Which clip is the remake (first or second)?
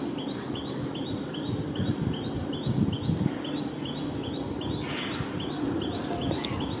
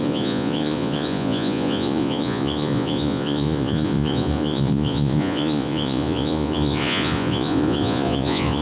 second